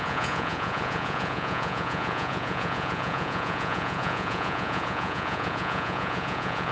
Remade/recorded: remade